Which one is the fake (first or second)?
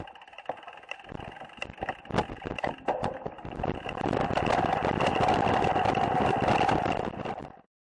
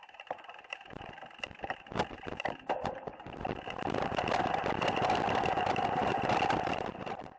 second